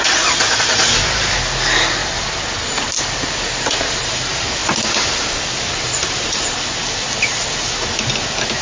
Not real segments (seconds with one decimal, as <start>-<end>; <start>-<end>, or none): none